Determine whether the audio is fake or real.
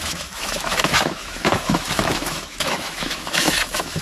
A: fake